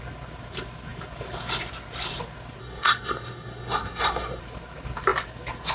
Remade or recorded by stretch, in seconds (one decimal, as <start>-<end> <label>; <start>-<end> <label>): 0.0-2.6 recorded; 2.6-4.4 remade; 4.4-5.7 recorded